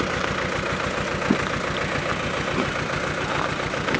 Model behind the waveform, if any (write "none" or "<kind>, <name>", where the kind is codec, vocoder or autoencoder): none